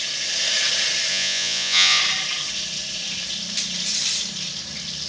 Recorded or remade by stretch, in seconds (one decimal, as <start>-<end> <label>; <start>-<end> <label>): 0.0-1.1 recorded; 1.1-2.0 remade; 2.0-5.1 recorded